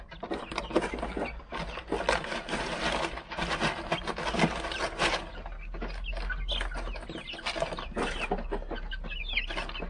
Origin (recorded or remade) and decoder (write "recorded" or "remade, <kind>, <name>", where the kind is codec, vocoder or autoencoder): recorded